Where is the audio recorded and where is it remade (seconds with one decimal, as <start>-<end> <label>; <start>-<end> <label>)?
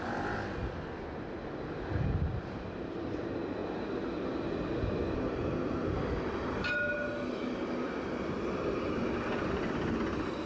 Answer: 0.0-10.5 recorded